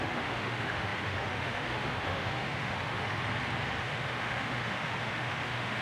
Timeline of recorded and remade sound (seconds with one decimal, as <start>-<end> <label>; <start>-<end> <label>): 0.0-3.2 remade; 3.2-3.8 recorded; 3.8-5.8 remade